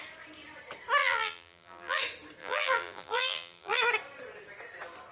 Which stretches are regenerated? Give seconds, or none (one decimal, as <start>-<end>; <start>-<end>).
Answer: 1.0-2.0; 2.4-3.8

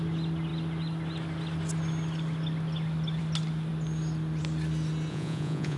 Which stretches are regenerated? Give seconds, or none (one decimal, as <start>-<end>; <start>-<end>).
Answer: 5.1-5.8

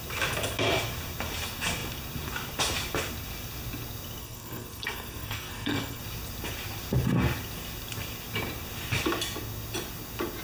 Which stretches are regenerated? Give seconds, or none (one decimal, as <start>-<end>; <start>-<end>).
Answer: 4.2-6.0

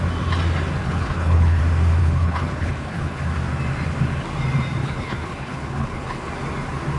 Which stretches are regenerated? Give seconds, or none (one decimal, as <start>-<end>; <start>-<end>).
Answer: 0.8-1.6; 2.0-3.2; 4.8-6.3